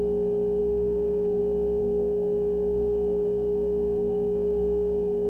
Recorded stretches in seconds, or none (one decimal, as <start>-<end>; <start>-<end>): 0.0-0.6; 1.4-1.8

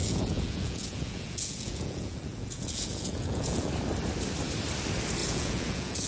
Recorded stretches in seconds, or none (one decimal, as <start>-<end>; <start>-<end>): 3.7-5.2

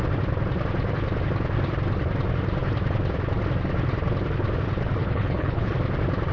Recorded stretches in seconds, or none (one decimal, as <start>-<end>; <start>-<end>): 0.0-5.0; 5.7-6.3

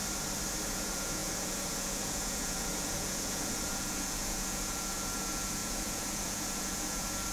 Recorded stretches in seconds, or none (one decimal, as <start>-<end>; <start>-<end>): 0.0-0.7

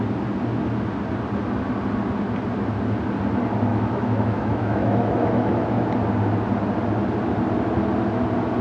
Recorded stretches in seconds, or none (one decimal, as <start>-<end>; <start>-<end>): 0.0-3.7; 5.9-8.6

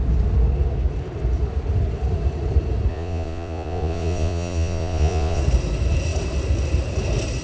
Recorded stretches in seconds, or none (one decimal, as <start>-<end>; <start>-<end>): 0.0-2.9; 5.4-7.4

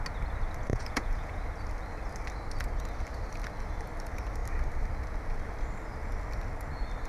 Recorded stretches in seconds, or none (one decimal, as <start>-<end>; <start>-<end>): 0.0-0.7; 1.4-7.1

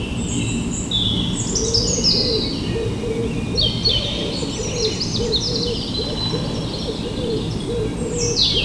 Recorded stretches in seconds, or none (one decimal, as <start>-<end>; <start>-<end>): 0.0-8.6